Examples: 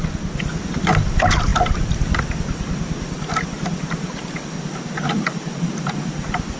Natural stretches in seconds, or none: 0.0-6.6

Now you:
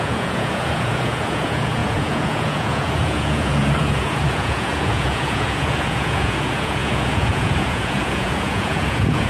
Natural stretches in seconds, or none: none

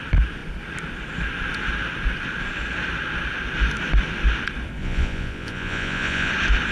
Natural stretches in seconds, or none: 0.0-4.8; 6.3-6.7